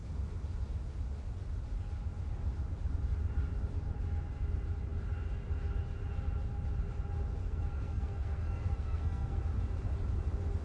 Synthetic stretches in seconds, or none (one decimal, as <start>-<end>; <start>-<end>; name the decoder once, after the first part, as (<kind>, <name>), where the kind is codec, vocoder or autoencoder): 7.4-9.4 (codec, SNAC)